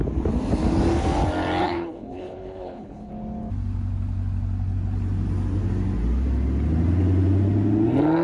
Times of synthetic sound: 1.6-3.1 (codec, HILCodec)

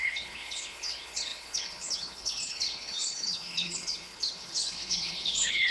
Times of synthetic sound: 0.0-5.7 (codec, HILCodec)

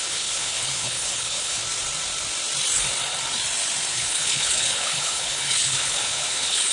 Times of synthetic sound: 0.0-1.6 (codec, HILCodec); 3.9-6.7

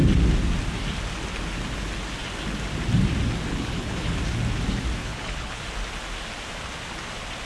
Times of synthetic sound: 3.5-4.2 (codec, HILCodec); 5.0-5.6

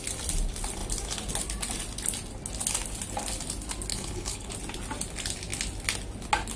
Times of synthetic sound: 3.9-4.5 (codec, HILCodec)

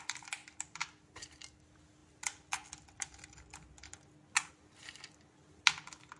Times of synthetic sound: none

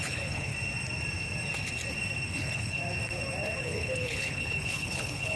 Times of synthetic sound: 0.0-0.5 (codec, HILCodec); 2.3-2.8; 3.6-5.4